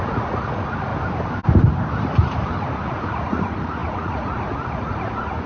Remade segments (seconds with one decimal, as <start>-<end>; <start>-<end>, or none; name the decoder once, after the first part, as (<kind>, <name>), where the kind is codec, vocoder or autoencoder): 0.0-0.9 (vocoder, Vocos); 2.9-5.5